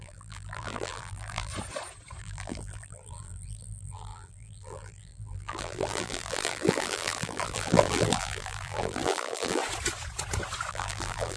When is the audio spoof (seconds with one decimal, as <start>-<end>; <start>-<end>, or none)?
0.0-1.5; 2.2-9.6; 10.7-11.4